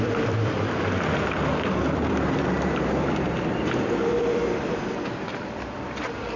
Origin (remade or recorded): remade